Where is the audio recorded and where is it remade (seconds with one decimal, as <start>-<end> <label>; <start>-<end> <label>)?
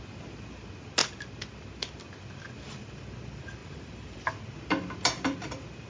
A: 0.0-3.6 recorded; 3.6-4.3 remade; 4.3-5.9 recorded